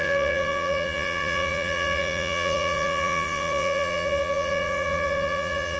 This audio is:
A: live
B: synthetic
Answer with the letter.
B